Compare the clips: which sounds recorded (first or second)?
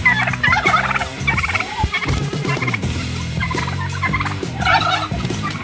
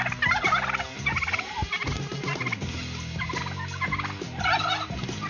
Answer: second